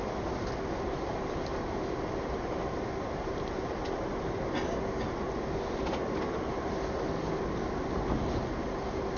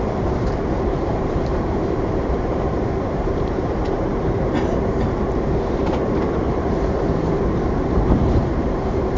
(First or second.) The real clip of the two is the first